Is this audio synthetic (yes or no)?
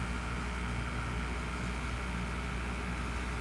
no